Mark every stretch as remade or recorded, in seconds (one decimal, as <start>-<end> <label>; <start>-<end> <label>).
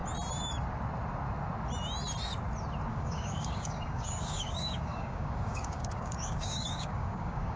0.0-2.9 recorded; 2.9-7.6 remade